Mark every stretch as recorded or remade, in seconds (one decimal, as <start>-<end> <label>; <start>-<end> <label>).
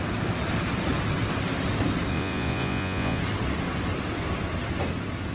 0.0-2.1 recorded; 2.1-3.2 remade; 3.2-5.3 recorded